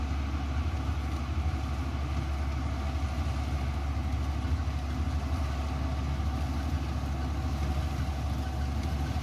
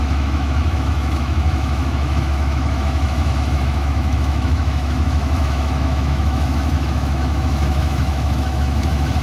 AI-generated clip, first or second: second